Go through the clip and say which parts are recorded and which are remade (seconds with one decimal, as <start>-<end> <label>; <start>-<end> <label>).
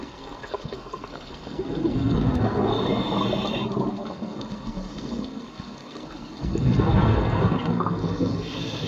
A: 0.0-2.7 remade; 2.7-3.9 recorded; 3.9-8.9 remade